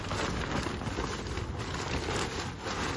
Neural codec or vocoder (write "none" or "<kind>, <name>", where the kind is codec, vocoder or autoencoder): none